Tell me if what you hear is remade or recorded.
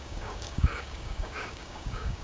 remade